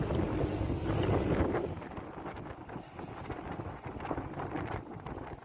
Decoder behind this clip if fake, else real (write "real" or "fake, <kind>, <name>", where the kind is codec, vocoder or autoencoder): real